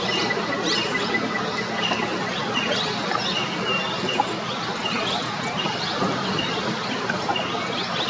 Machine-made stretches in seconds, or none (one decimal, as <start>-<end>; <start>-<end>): 4.8-5.8